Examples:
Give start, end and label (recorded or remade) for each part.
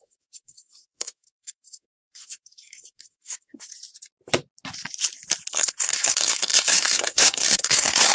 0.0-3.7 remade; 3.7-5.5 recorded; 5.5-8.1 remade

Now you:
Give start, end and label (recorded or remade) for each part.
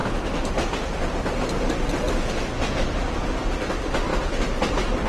0.0-5.1 recorded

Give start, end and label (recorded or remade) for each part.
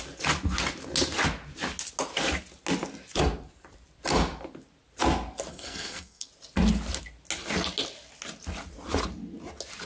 0.0-5.5 recorded; 5.5-6.3 remade; 6.3-9.9 recorded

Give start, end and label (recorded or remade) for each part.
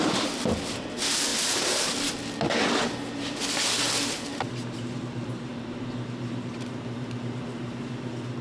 0.0-1.3 recorded; 1.3-2.0 remade; 2.0-4.3 recorded; 4.3-7.8 remade; 7.8-8.4 recorded